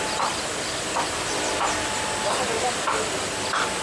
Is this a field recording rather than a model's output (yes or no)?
yes